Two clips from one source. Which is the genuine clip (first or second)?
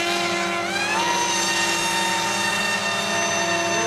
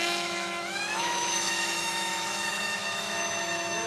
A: first